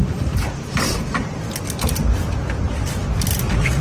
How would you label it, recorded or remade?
recorded